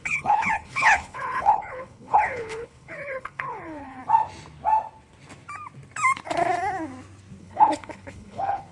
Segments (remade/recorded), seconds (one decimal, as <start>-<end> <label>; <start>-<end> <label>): 0.0-4.0 remade; 4.0-7.4 recorded; 7.4-8.7 remade